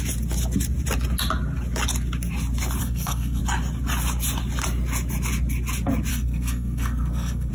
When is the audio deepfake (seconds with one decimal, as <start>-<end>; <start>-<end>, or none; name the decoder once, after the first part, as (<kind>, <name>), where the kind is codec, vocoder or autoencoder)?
2.8-3.4 (codec, SNAC); 6.1-7.5